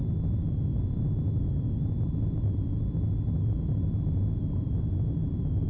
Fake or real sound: real